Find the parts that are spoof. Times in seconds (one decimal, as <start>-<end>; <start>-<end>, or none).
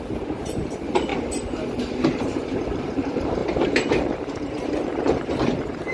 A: 0.0-1.1; 2.2-4.9